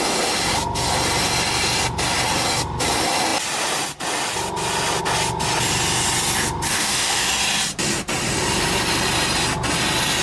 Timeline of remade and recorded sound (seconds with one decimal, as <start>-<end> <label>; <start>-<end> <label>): 0.0-6.7 recorded; 6.7-7.3 remade; 7.3-10.2 recorded